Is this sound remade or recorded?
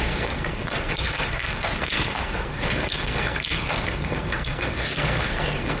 remade